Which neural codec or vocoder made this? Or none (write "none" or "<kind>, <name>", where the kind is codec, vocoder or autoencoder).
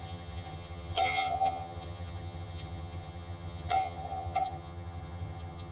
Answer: vocoder, HiFi-GAN